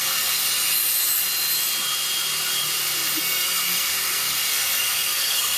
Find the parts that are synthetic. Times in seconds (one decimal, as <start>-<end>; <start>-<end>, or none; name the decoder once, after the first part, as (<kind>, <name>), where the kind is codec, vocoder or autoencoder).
0.0-0.4 (codec, SNAC); 3.2-5.6

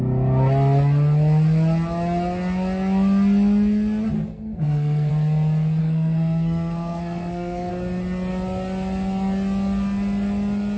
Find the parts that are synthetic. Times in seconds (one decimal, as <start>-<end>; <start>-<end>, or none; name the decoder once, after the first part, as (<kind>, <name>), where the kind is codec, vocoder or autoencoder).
4.3-5.1 (codec, SNAC); 5.8-7.7

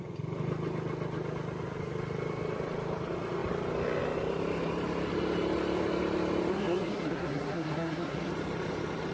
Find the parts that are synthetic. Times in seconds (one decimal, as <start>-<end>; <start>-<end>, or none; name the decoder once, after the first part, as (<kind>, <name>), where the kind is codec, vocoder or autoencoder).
6.5-8.3 (codec, SNAC)

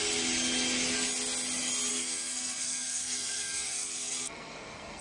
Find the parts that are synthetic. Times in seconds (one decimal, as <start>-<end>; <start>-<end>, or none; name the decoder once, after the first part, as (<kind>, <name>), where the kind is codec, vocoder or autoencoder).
1.9-5.0 (codec, SNAC)

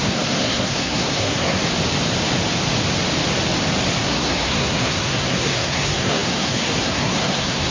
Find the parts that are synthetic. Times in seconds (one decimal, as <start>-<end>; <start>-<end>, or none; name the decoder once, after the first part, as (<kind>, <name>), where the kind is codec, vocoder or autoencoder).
0.0-1.6 (codec, SNAC); 4.0-7.7

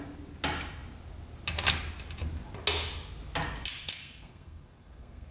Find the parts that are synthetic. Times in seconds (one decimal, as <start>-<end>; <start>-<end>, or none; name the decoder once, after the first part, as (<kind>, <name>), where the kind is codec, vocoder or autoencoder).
3.8-5.3 (codec, SNAC)

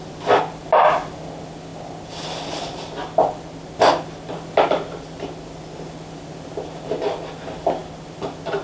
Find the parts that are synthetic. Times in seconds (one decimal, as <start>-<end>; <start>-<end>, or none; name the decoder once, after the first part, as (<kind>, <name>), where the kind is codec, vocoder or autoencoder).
none

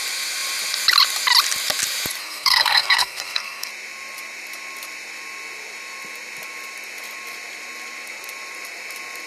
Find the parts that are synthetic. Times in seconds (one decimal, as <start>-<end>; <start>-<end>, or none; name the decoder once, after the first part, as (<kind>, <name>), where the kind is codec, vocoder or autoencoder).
2.2-3.7 (codec, SNAC)